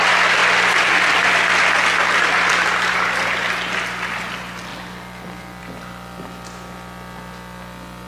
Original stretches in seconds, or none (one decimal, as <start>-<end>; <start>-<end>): 0.0-8.1